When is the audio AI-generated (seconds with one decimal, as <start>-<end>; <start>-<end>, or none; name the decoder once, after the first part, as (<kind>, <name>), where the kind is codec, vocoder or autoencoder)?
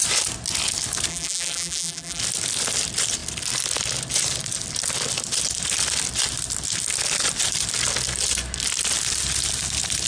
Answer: 1.1-2.2 (vocoder, BigVGAN v2)